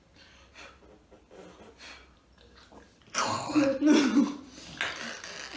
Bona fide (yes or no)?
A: yes